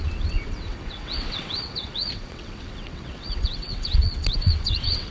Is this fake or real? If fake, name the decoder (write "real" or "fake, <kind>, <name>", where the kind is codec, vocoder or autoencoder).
fake, vocoder, WaveNeXt